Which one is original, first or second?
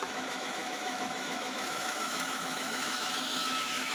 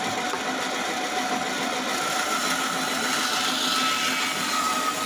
second